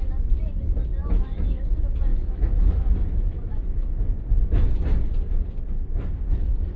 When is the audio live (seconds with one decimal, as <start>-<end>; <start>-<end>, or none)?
0.0-1.0; 1.6-2.1; 4.0-6.8